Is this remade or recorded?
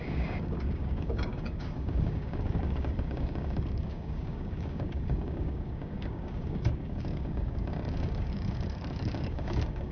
remade